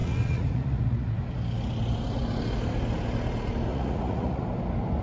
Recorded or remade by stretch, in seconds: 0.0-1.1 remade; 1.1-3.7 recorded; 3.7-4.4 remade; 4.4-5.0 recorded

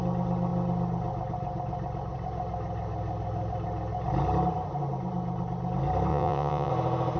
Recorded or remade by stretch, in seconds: 0.0-6.1 recorded; 6.1-6.7 remade; 6.7-7.2 recorded